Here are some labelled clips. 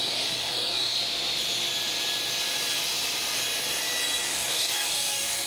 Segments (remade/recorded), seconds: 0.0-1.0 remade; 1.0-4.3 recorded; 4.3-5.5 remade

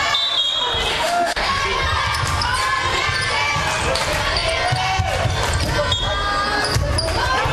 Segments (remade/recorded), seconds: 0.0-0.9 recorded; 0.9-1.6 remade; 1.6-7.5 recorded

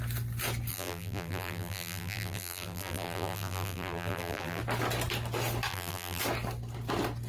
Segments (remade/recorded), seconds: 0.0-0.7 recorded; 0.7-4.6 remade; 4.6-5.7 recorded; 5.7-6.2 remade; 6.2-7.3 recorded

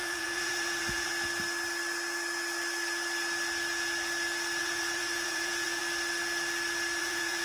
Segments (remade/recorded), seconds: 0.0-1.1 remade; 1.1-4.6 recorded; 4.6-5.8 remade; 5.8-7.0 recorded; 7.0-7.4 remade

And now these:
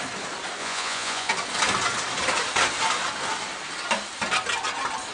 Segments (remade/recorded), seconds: 0.0-0.6 recorded; 0.6-1.3 remade; 1.3-5.1 recorded